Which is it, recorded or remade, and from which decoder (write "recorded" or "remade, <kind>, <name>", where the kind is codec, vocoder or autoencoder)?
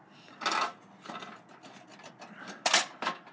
recorded